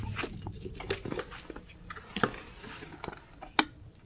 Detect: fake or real fake